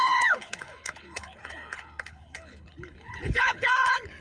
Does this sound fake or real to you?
fake